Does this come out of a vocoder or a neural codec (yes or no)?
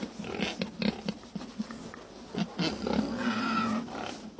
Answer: no